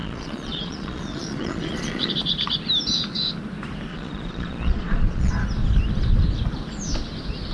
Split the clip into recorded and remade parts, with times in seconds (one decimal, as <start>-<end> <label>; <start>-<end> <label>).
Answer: 0.0-2.1 remade; 2.1-3.9 recorded; 3.9-5.3 remade; 5.3-7.5 recorded